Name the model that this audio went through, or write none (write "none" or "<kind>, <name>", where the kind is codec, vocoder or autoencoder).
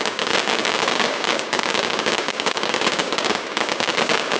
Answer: codec, DAC